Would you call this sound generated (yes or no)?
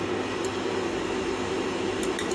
no